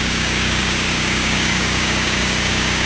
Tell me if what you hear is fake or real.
fake